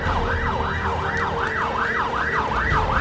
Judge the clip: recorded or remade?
recorded